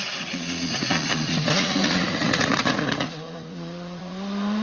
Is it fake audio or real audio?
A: fake